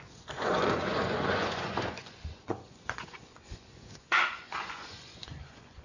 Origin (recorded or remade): remade